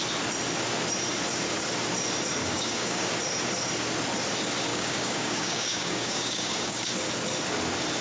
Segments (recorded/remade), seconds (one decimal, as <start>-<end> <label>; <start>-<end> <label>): 0.0-2.4 recorded; 2.4-3.1 remade; 3.1-4.7 recorded; 4.7-6.9 remade; 6.9-8.0 recorded